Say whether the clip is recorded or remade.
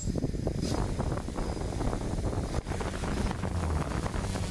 recorded